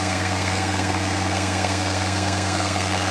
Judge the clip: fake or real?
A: fake